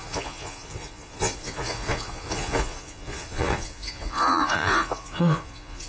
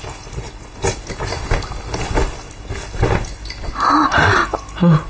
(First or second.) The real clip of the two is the second